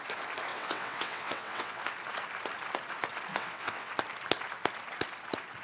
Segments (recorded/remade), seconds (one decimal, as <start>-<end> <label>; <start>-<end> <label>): 0.0-0.5 recorded; 0.5-1.8 remade; 1.8-3.3 recorded; 3.3-3.9 remade; 3.9-5.6 recorded